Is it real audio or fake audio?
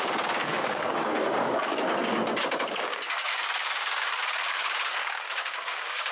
fake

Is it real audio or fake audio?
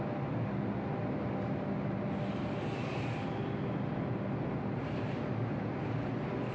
real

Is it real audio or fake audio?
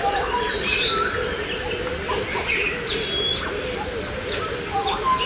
real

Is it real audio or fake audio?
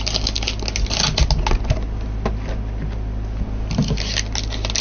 real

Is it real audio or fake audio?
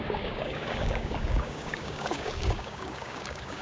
fake